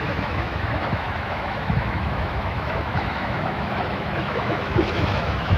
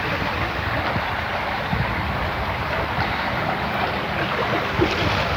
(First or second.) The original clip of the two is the second